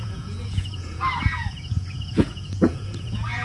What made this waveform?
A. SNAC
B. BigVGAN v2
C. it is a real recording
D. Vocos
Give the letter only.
D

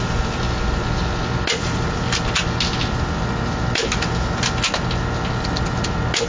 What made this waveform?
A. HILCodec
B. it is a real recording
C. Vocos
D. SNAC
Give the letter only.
B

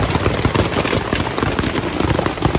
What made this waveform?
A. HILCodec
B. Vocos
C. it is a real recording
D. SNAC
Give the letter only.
C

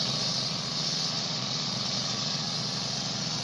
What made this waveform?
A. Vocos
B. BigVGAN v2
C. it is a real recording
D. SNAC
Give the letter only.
A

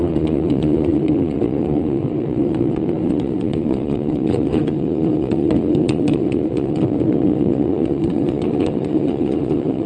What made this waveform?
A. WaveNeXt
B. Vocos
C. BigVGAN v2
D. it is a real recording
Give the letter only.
B